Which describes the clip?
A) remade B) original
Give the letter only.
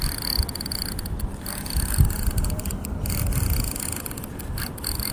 B